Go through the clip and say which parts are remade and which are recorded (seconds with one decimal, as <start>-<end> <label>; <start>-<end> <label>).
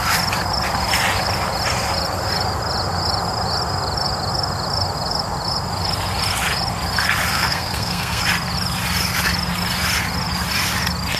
0.0-7.3 recorded; 7.3-8.2 remade; 8.2-11.2 recorded